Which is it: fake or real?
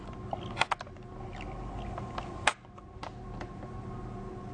real